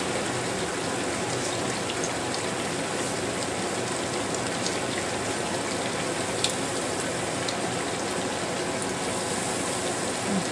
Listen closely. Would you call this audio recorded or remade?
recorded